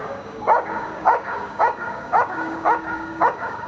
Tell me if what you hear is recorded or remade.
remade